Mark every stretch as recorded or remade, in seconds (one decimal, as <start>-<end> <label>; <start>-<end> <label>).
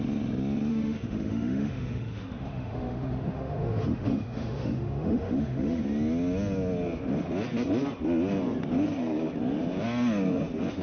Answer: 0.0-0.7 recorded; 0.7-5.8 remade; 5.8-10.8 recorded